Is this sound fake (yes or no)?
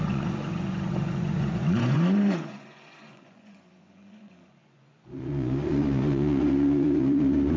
yes